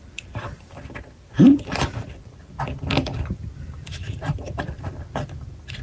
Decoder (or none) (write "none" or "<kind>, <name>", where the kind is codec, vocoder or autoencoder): vocoder, BigVGAN v2